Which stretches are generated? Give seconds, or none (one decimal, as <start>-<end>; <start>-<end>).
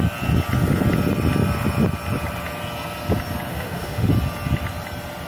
3.5-4.1